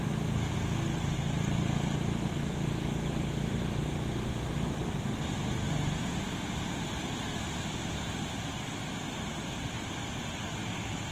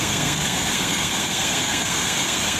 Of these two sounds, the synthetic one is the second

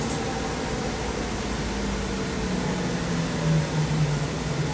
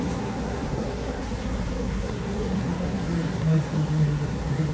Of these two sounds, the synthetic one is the second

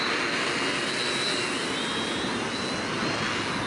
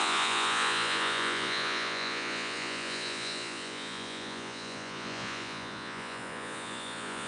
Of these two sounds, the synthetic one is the second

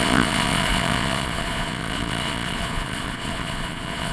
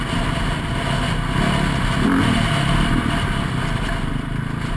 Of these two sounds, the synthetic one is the first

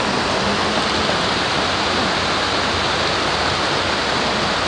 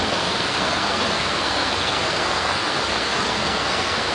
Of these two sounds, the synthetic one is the second